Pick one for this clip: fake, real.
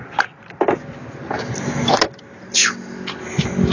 real